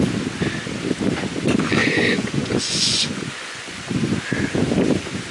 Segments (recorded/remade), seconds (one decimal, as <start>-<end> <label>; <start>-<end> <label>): 0.0-1.8 recorded; 1.8-3.8 remade; 3.8-5.3 recorded